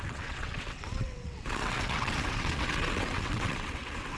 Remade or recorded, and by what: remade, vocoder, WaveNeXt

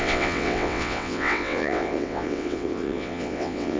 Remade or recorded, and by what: remade, vocoder, WaveNeXt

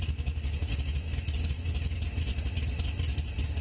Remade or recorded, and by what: recorded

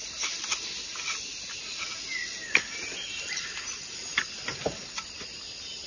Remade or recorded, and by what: recorded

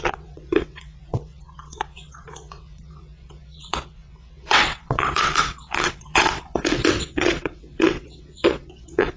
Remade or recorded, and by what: remade, vocoder, WaveNeXt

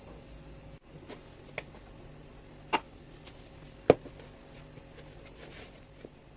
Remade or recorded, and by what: recorded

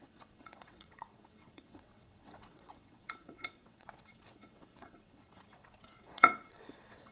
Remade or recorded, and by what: remade, vocoder, WaveNeXt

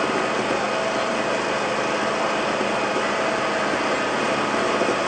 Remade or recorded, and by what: recorded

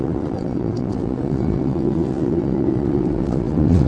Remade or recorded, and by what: remade, vocoder, WaveNeXt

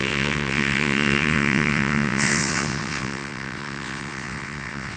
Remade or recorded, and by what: remade, vocoder, WaveNeXt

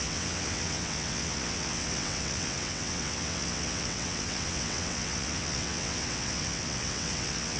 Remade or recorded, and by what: remade, vocoder, WaveNeXt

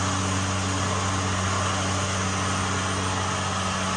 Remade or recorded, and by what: recorded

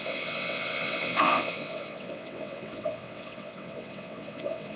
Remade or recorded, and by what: remade, vocoder, WaveNeXt